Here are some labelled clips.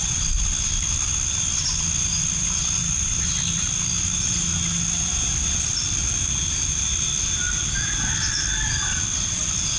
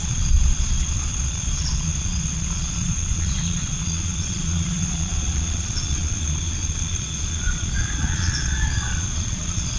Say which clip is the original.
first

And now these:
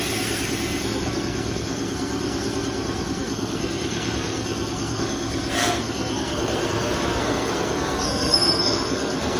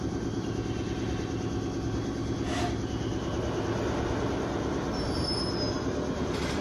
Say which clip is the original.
second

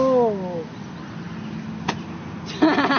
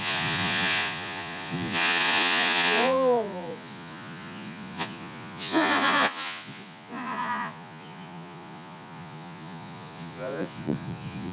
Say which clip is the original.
first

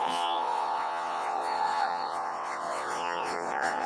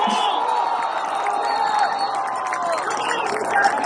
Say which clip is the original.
second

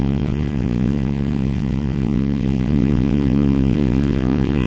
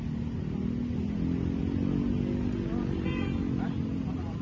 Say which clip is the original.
second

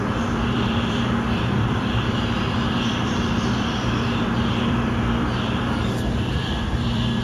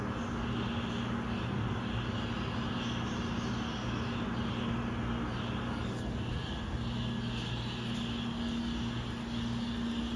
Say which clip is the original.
second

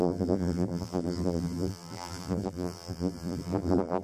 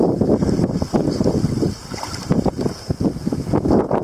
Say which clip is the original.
second